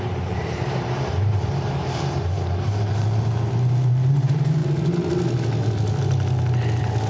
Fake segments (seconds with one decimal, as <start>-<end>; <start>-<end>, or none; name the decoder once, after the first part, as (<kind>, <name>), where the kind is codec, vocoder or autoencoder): 0.0-4.6 (vocoder, BigVGAN v2)

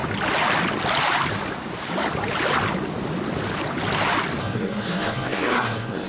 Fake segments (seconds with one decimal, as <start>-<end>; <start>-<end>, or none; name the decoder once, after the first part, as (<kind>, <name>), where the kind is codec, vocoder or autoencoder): 4.4-6.1 (codec, SNAC)

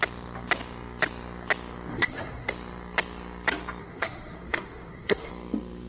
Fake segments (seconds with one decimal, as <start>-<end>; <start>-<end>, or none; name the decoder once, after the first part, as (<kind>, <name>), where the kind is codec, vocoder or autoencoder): 1.9-2.5 (codec, SNAC); 3.8-5.3

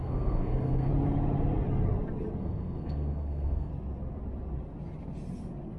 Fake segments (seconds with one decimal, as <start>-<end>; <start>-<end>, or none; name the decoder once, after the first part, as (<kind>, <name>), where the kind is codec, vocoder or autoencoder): 0.0-0.9 (codec, SNAC); 2.4-3.7

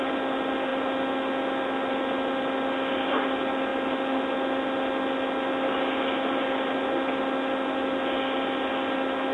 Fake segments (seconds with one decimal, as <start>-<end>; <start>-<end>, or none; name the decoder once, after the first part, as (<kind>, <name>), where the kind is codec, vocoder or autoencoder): none